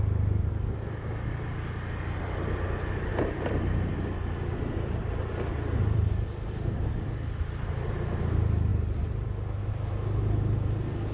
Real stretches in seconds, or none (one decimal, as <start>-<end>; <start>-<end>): 0.0-3.1; 7.9-11.1